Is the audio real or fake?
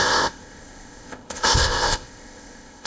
fake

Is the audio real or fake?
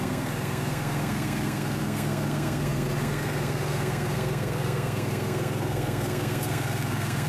fake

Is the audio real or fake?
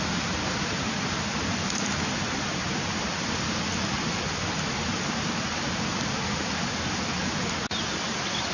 real